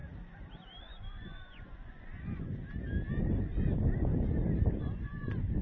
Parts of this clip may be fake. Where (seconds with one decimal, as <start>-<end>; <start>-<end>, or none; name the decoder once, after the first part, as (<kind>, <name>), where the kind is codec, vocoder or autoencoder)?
0.8-2.6 (vocoder, Vocos); 3.3-4.1; 4.8-5.6